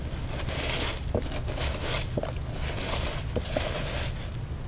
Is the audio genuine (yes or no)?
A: yes